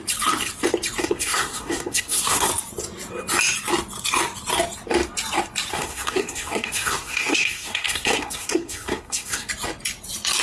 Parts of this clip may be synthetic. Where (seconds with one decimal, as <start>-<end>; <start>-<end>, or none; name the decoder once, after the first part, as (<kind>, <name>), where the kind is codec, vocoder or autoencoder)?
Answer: 1.0-2.5 (codec, SNAC); 5.7-9.5